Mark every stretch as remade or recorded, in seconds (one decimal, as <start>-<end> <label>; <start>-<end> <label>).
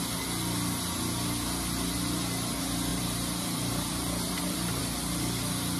0.0-2.9 recorded; 2.9-4.8 remade; 4.8-5.8 recorded